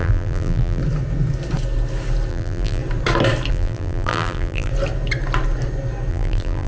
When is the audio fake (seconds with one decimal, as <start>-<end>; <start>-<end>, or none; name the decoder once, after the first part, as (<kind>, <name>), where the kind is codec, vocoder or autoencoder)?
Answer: 0.0-0.8 (vocoder, BigVGAN v2); 2.3-2.8; 3.5-4.7; 6.1-6.7